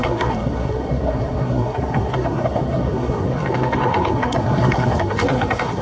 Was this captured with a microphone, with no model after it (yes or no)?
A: no